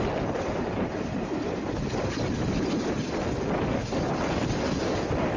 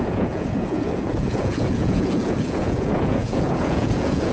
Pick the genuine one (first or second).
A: first